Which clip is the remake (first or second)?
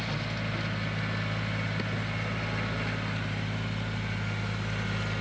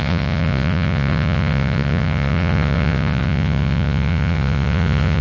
second